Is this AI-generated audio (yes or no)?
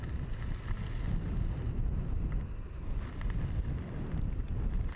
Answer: no